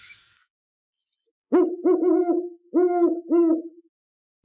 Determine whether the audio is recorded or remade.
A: remade